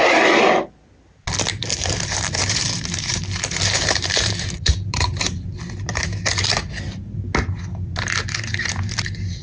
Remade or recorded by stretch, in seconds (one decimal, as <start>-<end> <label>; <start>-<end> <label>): 0.0-1.5 recorded; 1.5-6.7 remade; 6.7-9.4 recorded